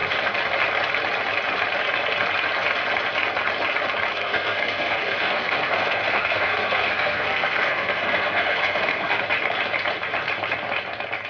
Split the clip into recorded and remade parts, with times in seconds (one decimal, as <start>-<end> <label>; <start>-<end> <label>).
0.0-4.1 recorded; 4.1-9.2 remade; 9.2-11.3 recorded